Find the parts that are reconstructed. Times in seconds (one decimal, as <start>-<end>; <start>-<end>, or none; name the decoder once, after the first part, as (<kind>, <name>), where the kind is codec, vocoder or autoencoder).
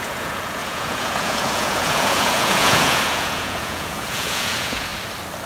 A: 0.0-4.9 (vocoder, Vocos)